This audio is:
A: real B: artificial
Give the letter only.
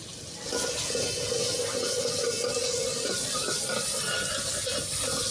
A